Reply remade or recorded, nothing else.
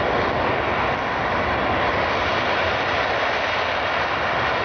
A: recorded